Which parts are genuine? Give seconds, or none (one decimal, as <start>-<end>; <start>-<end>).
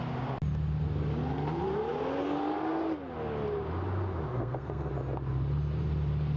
0.0-4.3; 4.9-6.4